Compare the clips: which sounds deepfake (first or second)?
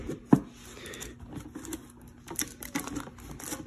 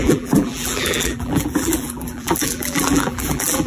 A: second